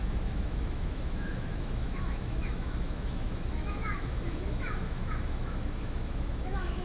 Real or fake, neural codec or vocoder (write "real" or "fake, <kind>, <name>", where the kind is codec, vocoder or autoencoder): fake, autoencoder, DAC-VAE